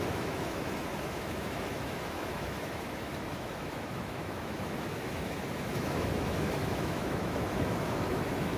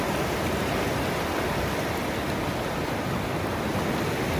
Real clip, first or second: second